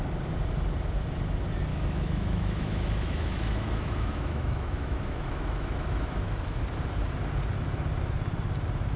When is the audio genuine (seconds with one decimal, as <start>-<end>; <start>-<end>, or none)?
0.0-1.7; 6.6-9.0